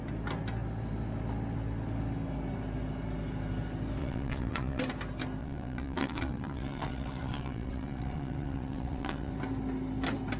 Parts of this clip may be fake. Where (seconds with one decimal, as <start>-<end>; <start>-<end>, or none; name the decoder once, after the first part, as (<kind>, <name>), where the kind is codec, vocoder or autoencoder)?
4.0-4.8 (vocoder, WaveNeXt); 5.4-9.3